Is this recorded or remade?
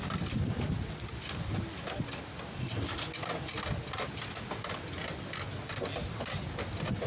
recorded